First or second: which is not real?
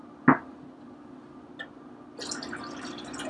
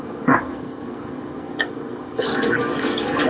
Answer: second